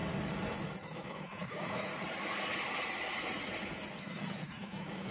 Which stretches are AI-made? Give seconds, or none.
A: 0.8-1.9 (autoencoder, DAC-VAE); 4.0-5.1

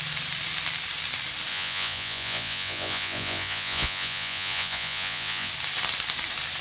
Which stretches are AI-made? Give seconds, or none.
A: 1.5-5.5 (vocoder, Vocos)

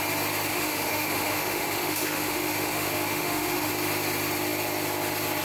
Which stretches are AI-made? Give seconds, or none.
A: 0.5-3.7 (autoencoder, DAC-VAE)

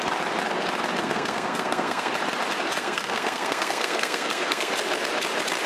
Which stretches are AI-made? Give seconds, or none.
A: 1.0-2.1 (codec, SNAC); 2.8-4.7

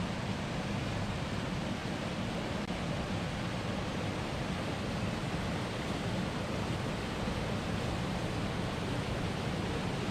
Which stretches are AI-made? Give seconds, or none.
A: none

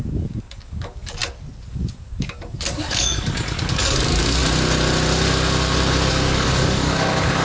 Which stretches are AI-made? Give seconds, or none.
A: 0.0-1.2 (codec, DAC); 1.7-4.4; 6.1-7.4

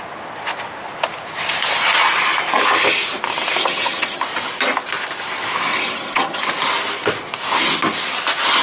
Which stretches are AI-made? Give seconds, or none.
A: 3.6-4.2 (vocoder, HiFi-GAN); 5.7-6.4

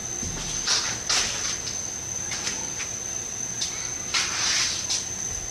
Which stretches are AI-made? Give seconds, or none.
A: none